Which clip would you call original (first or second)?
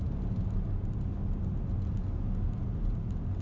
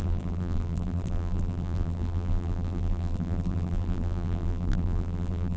first